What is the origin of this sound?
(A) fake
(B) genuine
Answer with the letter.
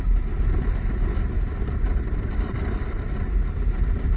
B